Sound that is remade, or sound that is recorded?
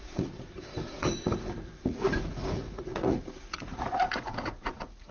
remade